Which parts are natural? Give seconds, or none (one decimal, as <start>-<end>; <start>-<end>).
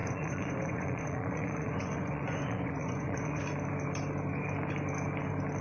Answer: 3.4-5.6